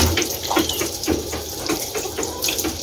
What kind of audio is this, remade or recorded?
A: remade